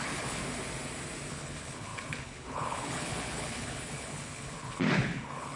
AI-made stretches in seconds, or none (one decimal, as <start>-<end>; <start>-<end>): 0.0-0.4; 1.3-5.6

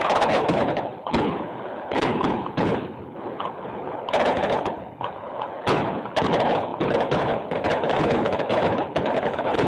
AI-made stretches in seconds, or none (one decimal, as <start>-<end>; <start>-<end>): 0.0-9.7

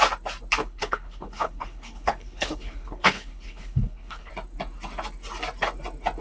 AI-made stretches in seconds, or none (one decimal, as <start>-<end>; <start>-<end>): 0.6-4.3

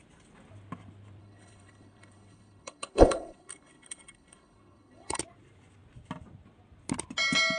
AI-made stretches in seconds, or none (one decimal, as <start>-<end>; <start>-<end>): 1.2-5.2

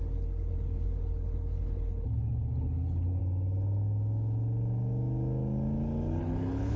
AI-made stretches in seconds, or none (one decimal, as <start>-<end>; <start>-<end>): 0.0-3.2; 6.2-6.8